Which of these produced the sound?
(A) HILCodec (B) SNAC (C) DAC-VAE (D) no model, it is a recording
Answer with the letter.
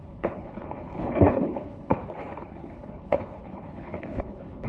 A